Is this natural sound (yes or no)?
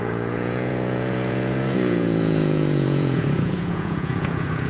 no